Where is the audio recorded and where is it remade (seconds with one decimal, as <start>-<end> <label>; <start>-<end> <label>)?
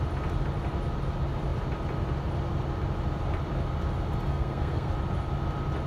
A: 0.0-4.3 recorded; 4.3-4.9 remade; 4.9-5.9 recorded